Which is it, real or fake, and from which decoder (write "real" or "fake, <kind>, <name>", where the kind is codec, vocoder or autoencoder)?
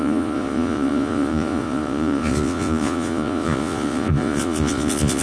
fake, vocoder, Vocos